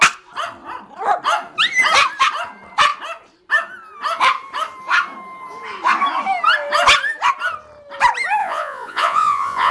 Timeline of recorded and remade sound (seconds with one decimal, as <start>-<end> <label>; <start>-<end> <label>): 0.0-8.4 recorded; 8.4-9.7 remade